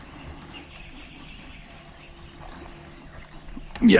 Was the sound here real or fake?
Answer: real